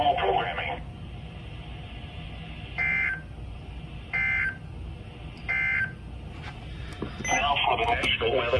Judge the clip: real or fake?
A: real